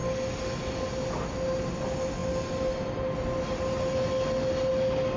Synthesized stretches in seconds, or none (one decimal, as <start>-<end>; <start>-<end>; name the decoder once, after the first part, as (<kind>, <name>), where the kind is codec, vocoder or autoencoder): none